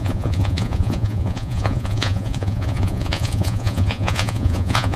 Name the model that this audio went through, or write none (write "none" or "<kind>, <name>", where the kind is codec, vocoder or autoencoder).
vocoder, Vocos